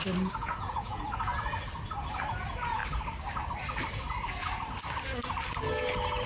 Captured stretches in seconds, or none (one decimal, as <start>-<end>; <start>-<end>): 0.0-0.4; 1.0-6.3

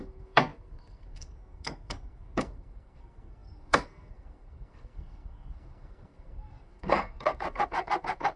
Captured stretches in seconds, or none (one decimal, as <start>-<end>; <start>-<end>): none

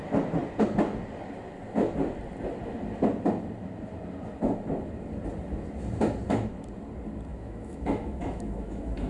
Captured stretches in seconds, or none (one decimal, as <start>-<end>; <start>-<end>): 0.0-7.3

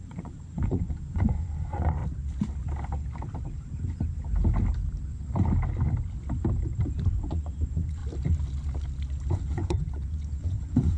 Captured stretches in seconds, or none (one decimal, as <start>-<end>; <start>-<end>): 2.0-7.1; 8.0-9.3

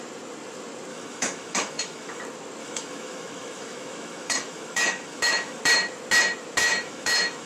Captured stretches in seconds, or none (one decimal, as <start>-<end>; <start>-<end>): 0.0-0.9; 2.2-2.6; 5.6-6.6

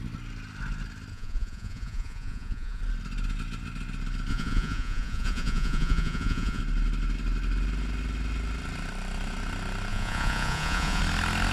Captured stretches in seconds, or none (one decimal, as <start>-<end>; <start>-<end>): 0.0-1.1; 2.8-4.3; 6.6-9.9; 11.0-11.5

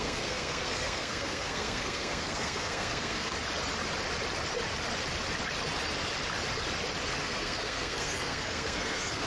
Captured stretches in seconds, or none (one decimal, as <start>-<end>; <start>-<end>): 3.3-7.2